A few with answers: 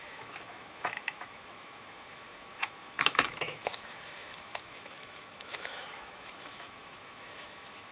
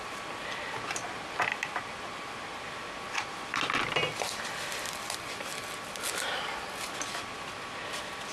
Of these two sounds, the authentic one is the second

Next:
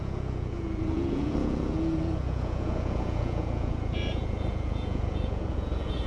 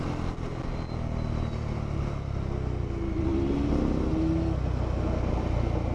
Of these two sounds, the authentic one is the second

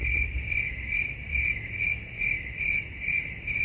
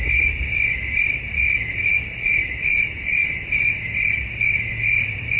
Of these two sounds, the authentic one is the first